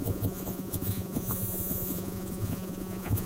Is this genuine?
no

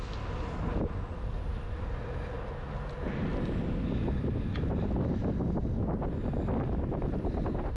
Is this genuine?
yes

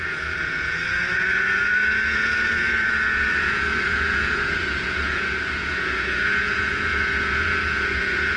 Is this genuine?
no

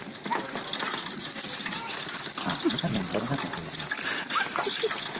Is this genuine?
yes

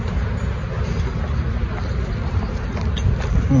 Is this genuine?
yes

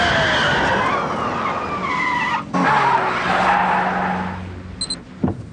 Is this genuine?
yes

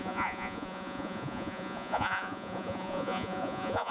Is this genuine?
no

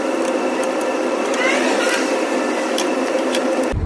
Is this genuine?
yes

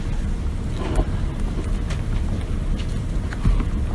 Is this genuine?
yes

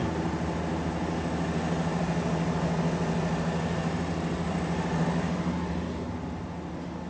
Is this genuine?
yes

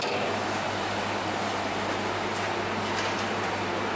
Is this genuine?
yes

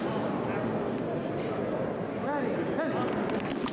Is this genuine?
yes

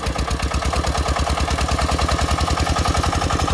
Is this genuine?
yes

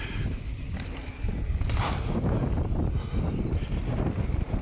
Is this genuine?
yes